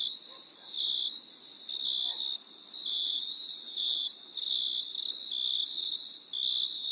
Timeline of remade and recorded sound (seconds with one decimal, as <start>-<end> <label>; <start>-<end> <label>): 0.0-2.9 recorded; 2.9-4.1 remade; 4.1-6.9 recorded